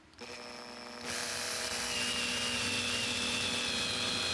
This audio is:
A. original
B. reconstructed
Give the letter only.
A